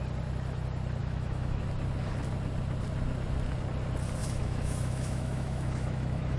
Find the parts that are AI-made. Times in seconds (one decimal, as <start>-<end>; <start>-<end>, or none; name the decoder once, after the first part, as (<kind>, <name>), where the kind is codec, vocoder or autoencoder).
1.0-1.6 (autoencoder, DAC-VAE); 4.2-6.4